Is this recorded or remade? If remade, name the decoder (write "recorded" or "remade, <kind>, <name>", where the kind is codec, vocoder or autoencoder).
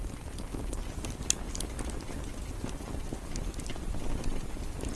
recorded